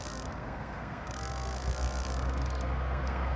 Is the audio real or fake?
fake